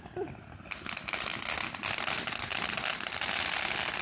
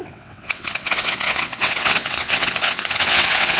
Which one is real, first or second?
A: first